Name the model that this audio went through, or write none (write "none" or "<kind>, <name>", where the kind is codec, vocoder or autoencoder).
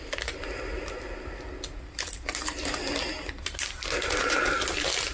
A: none